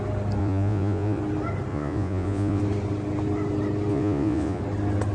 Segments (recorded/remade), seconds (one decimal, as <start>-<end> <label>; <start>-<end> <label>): 0.0-0.4 recorded; 0.4-1.2 remade; 1.2-1.7 recorded; 1.7-2.6 remade; 2.6-3.9 recorded; 3.9-4.6 remade; 4.6-5.1 recorded